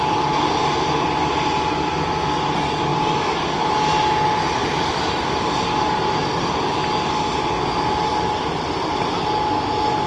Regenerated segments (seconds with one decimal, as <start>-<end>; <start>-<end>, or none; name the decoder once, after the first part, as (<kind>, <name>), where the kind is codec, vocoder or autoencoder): 2.9-3.7 (vocoder, BigVGAN v2); 4.6-5.4; 8.1-9.2